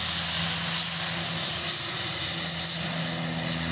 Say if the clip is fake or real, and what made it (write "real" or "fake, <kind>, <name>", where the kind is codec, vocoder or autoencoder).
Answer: real